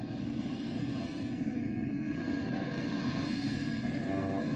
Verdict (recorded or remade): remade